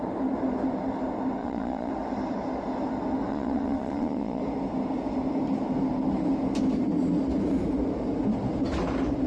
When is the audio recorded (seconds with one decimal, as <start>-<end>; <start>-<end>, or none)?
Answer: 0.0-1.4; 1.9-3.3; 4.4-9.3